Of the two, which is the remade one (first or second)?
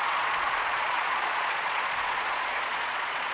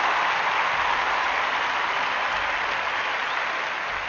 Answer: first